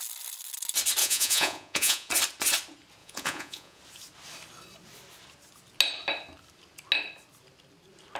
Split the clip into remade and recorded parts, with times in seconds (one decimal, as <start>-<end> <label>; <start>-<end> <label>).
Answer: 0.0-1.0 recorded; 1.0-2.1 remade; 2.1-3.0 recorded; 3.0-3.8 remade; 3.8-8.2 recorded